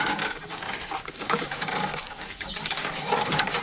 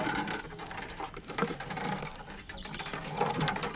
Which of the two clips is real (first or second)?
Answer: second